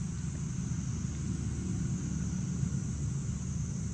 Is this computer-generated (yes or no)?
no